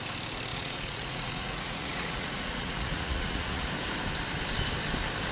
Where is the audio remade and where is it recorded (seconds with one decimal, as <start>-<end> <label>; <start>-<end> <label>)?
0.0-0.5 recorded; 0.5-3.7 remade; 3.7-5.3 recorded